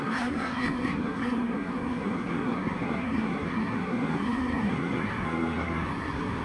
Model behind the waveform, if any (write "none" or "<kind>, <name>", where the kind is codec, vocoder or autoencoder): codec, SNAC